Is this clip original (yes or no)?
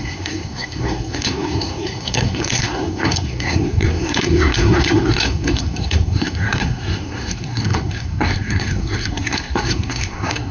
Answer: no